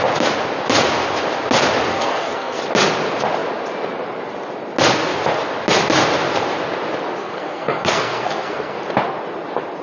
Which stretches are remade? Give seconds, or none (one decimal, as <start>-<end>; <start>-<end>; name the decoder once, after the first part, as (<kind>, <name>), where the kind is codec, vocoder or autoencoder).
1.9-2.6 (codec, SNAC); 7.2-8.8